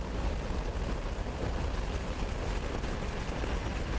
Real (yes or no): yes